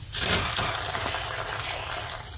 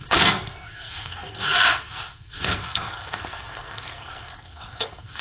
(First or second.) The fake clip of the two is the second